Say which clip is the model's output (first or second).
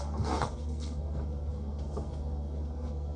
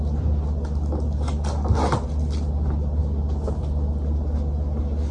first